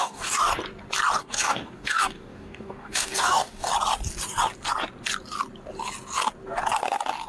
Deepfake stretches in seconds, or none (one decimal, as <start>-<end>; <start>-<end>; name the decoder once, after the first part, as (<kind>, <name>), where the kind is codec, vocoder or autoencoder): 0.0-0.5 (codec, DAC); 1.2-3.7